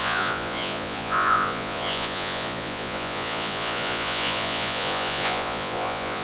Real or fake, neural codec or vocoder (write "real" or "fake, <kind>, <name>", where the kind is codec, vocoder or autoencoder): fake, vocoder, Vocos